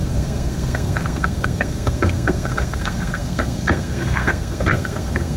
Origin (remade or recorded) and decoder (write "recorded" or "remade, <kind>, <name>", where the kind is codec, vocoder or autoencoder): remade, codec, SNAC